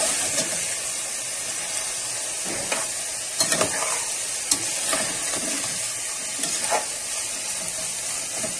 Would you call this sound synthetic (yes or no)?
no